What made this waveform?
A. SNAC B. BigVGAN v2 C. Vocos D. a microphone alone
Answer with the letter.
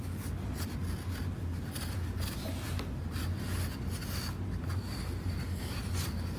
D